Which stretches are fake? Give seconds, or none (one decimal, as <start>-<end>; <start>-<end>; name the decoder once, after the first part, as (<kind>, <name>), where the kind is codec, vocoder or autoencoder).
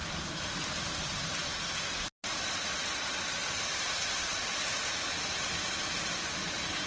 none